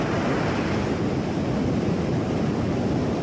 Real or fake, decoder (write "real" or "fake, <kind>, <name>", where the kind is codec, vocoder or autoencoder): real